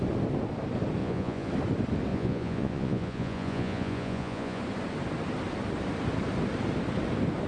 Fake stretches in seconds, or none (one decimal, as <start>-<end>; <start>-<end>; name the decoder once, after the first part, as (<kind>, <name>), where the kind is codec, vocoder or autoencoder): 1.0-1.5 (vocoder, Vocos); 2.1-4.6